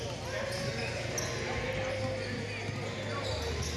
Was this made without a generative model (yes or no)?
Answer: yes